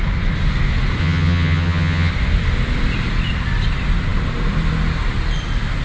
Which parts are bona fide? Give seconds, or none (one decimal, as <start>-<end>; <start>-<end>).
0.0-1.0; 2.1-5.8